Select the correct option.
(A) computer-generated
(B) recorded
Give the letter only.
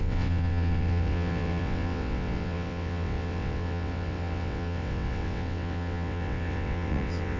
A